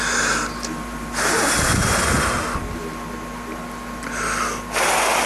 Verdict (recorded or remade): recorded